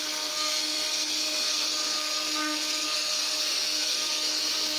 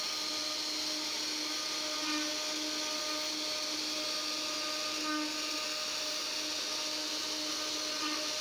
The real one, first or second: second